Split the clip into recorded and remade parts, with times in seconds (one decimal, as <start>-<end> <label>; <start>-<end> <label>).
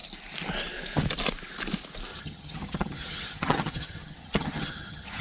0.0-2.1 recorded; 2.1-5.2 remade